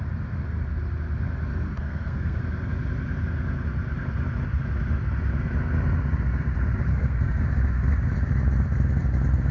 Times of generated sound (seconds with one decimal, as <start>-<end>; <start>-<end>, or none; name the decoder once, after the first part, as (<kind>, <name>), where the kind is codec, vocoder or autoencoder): 1.5-2.4 (codec, SNAC); 6.9-7.4